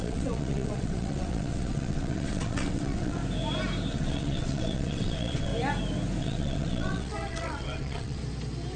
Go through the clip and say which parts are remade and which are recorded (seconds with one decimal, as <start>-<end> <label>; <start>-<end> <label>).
0.0-3.2 remade; 3.2-3.9 recorded; 3.9-5.5 remade; 5.5-6.2 recorded; 6.2-8.2 remade; 8.2-8.8 recorded